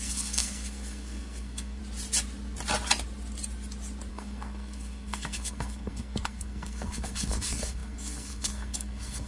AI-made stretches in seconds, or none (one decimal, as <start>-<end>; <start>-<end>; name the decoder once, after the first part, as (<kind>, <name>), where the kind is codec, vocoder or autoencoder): 0.0-1.8 (codec, SNAC); 4.1-9.3